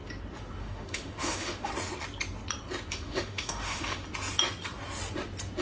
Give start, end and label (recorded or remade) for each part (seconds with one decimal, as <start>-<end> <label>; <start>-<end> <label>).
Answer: 0.0-0.6 recorded; 0.6-1.7 remade; 1.7-2.9 recorded; 2.9-4.0 remade; 4.0-5.6 recorded